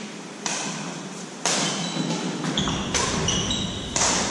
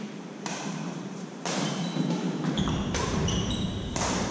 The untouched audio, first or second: first